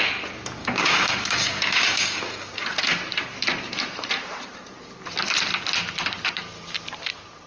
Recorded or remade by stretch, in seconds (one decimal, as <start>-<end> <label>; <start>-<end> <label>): 0.0-0.6 recorded; 0.6-2.6 remade; 2.6-7.5 recorded